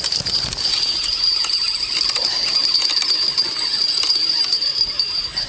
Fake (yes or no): no